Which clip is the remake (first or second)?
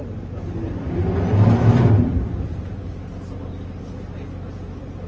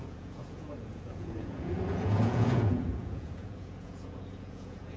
second